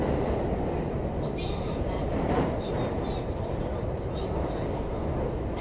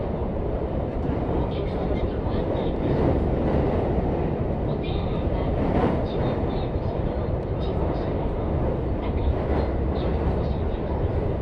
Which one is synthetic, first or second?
second